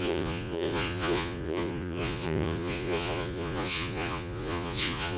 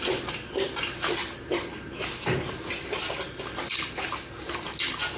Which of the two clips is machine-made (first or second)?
first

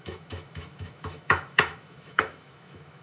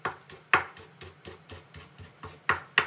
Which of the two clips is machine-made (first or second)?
first